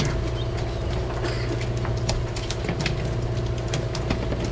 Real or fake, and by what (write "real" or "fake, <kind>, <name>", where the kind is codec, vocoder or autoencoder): real